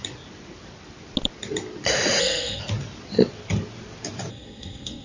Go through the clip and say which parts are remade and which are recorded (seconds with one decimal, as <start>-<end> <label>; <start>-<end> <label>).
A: 0.0-2.2 recorded; 2.2-2.6 remade; 2.6-4.3 recorded; 4.3-5.0 remade